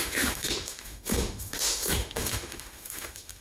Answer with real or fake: fake